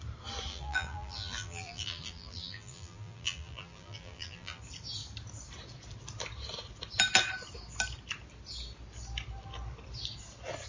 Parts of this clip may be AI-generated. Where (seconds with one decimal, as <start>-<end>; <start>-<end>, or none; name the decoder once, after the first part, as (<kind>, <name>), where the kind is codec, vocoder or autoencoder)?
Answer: 0.5-4.6 (vocoder, BigVGAN v2)